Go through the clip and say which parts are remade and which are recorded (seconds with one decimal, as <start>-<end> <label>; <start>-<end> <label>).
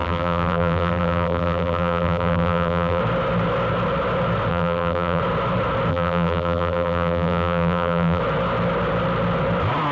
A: 0.0-3.0 remade; 3.0-4.5 recorded; 4.5-5.2 remade; 5.2-5.9 recorded; 5.9-8.2 remade; 8.2-9.9 recorded